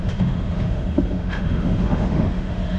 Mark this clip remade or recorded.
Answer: remade